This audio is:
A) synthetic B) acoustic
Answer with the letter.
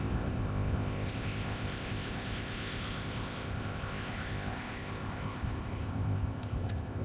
A